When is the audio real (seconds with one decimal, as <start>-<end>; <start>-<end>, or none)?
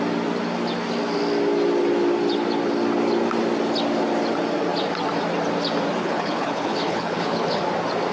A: 0.0-6.0; 7.6-8.1